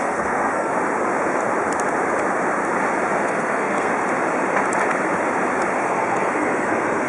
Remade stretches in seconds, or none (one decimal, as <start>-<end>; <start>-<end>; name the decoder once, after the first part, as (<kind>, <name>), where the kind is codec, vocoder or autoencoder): 0.0-0.7 (codec, SNAC); 3.2-3.9; 5.8-7.1